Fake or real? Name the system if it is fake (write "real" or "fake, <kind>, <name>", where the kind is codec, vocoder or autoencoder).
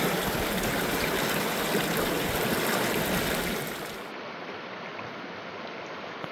real